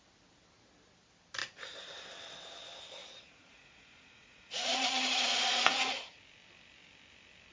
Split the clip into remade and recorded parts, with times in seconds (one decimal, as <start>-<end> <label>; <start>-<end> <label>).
0.0-1.4 recorded; 1.4-2.1 remade; 2.1-3.0 recorded; 3.0-6.2 remade; 6.2-7.5 recorded

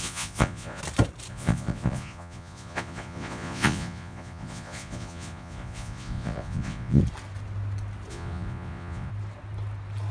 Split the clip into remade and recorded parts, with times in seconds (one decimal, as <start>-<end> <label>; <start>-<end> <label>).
0.0-0.8 remade; 0.8-1.3 recorded; 1.3-7.0 remade; 7.0-8.1 recorded; 8.1-9.1 remade; 9.1-10.1 recorded

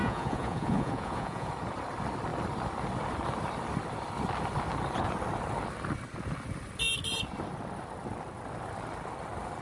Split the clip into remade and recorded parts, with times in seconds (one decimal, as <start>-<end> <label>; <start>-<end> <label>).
0.0-1.5 remade; 1.5-9.6 recorded

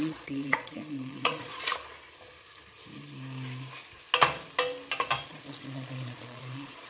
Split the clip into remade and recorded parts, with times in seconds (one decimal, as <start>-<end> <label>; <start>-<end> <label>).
0.0-1.7 remade; 1.7-5.3 recorded; 5.3-6.9 remade

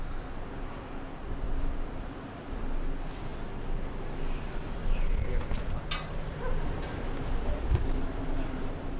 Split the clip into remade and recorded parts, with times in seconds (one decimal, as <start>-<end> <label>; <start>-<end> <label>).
0.0-9.0 recorded